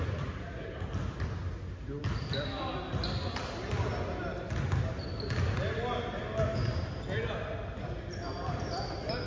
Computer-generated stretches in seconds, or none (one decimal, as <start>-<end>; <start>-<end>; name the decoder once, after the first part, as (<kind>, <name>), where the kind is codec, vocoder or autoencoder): none